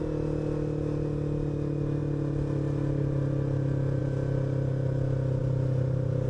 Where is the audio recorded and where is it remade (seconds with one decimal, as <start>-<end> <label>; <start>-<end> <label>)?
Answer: 0.0-6.3 recorded